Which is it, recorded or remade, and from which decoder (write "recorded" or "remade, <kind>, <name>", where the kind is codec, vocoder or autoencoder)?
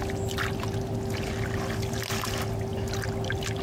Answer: recorded